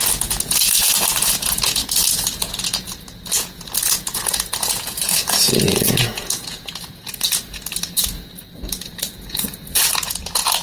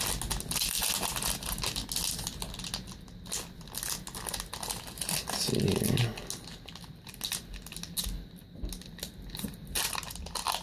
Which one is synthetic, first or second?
first